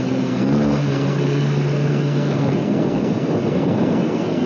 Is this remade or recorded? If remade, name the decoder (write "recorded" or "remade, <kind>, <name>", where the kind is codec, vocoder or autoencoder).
remade, codec, SNAC